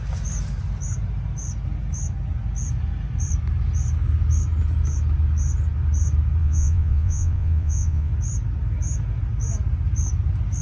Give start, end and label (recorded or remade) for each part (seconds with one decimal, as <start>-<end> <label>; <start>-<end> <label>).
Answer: 0.0-6.4 recorded; 6.4-8.1 remade; 8.1-10.6 recorded